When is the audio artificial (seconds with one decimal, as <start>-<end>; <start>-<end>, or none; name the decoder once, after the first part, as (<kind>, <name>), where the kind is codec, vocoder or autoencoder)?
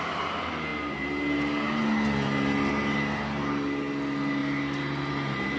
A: none